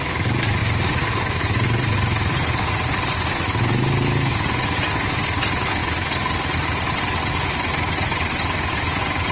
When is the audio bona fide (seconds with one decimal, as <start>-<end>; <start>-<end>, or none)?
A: 0.0-9.3